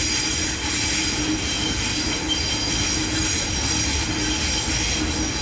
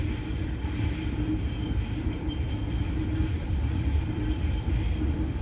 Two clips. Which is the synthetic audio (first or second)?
second